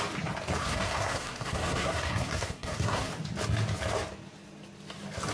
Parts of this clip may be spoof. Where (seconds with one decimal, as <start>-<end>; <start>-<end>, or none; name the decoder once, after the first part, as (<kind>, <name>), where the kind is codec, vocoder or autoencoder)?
0.6-3.1 (codec, SNAC)